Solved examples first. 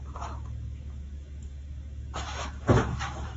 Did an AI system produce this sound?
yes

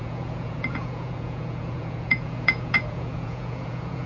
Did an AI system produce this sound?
yes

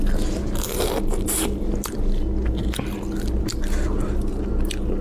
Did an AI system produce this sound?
no